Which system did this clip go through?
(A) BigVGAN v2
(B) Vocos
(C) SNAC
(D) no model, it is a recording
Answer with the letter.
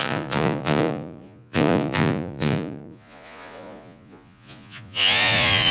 B